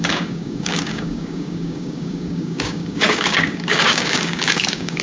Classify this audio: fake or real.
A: fake